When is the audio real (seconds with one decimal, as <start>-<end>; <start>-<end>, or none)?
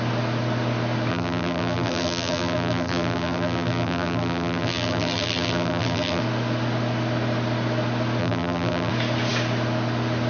0.0-1.1; 6.2-8.2; 8.9-10.3